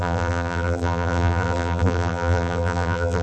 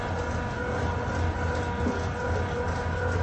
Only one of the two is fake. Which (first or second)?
first